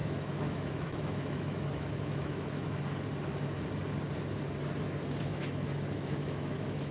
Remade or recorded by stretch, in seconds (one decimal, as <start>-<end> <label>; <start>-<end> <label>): 0.0-2.8 remade; 2.8-5.3 recorded; 5.3-6.9 remade